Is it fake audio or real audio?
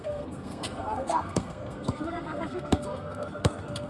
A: fake